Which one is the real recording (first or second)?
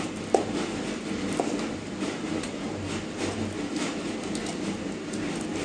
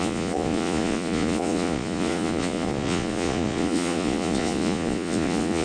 first